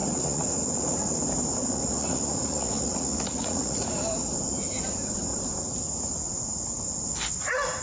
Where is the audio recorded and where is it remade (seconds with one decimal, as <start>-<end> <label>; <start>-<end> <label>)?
0.0-1.2 remade; 1.2-1.6 recorded; 1.6-3.8 remade; 3.8-7.8 recorded

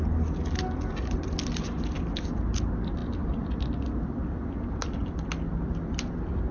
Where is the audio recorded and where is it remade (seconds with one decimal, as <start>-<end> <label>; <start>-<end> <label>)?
0.0-6.5 recorded

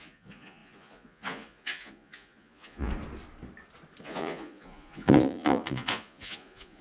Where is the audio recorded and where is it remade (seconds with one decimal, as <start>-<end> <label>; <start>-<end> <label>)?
0.0-2.9 remade; 2.9-4.0 recorded; 4.0-6.8 remade